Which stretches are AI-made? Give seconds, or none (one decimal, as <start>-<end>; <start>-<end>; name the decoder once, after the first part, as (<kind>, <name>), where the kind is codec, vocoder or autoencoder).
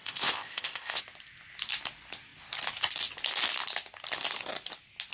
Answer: 0.0-1.0 (codec, ZipCodec)